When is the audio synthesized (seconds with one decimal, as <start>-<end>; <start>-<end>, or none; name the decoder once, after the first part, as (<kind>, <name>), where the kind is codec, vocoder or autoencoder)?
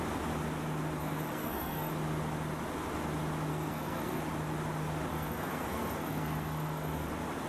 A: 1.0-1.9 (codec, SNAC); 3.5-4.2; 5.1-7.1